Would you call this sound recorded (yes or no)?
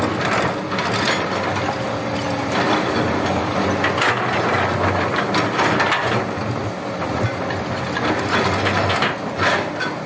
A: yes